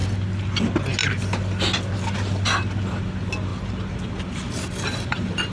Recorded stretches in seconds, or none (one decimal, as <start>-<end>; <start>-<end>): 0.0-5.5